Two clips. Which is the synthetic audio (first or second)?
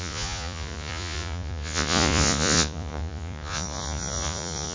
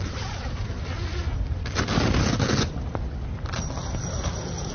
first